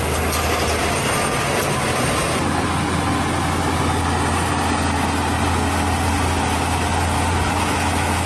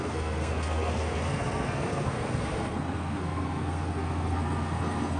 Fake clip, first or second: second